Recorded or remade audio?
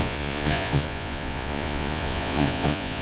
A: remade